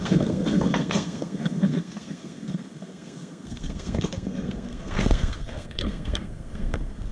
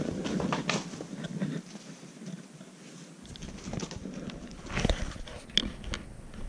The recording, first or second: second